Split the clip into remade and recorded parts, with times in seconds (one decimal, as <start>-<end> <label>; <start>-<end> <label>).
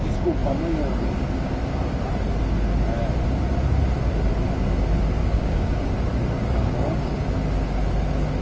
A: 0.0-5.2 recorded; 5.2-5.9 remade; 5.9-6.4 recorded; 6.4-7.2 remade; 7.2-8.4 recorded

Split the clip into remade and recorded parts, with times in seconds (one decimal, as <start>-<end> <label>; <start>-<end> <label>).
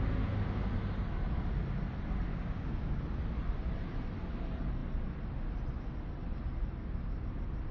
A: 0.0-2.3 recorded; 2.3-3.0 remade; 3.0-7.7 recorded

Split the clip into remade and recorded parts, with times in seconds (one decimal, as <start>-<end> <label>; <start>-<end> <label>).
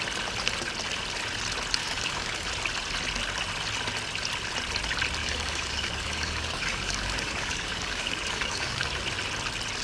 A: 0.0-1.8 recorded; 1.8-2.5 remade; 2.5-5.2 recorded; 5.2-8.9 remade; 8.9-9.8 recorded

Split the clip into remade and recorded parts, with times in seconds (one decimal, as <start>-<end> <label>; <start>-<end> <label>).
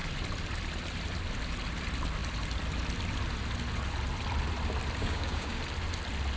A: 0.0-5.0 recorded; 5.0-5.6 remade; 5.6-6.4 recorded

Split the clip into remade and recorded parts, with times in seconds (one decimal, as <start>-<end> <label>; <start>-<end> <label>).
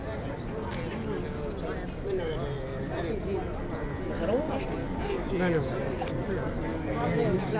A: 0.0-4.8 recorded; 4.8-5.3 remade; 5.3-6.7 recorded; 6.7-7.6 remade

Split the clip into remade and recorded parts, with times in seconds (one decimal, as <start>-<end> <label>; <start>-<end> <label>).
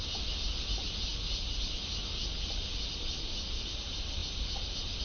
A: 0.0-5.0 recorded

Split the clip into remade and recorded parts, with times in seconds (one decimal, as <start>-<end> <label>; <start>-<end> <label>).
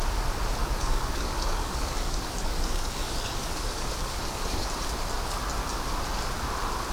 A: 0.0-0.6 recorded; 0.6-4.7 remade; 4.7-6.9 recorded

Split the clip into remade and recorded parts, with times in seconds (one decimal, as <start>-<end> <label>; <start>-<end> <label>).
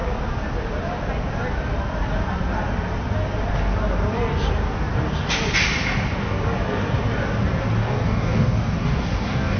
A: 0.0-7.8 recorded; 7.8-9.6 remade